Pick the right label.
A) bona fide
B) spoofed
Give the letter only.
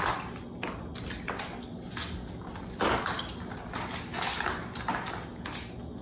A